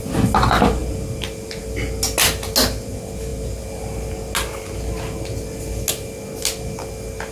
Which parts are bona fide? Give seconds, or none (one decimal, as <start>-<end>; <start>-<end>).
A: 0.0-7.3

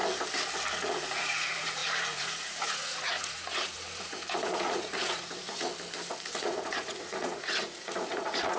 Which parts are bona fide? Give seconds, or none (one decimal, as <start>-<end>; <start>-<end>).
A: 0.0-0.7; 5.7-6.4

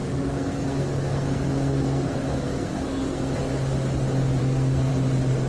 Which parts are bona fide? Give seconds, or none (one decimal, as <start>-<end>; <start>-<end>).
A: 3.3-4.4; 4.9-5.5

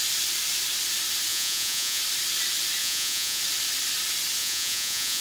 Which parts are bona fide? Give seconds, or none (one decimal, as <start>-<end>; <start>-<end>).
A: 0.0-1.3; 2.0-2.8; 3.4-4.4

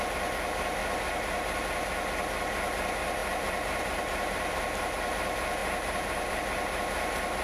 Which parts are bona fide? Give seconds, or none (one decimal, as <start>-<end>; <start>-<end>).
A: 0.0-3.2; 4.8-5.6; 6.4-7.4